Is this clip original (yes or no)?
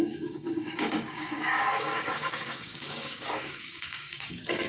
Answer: no